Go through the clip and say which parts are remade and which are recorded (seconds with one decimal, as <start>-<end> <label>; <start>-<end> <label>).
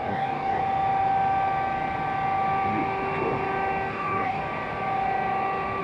0.0-0.6 remade; 0.6-3.9 recorded; 3.9-4.4 remade; 4.4-5.8 recorded